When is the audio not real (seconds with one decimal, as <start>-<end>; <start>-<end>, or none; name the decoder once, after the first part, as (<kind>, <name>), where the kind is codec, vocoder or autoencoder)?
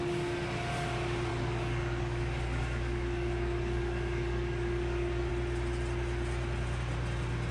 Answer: 1.3-5.3 (codec, DAC)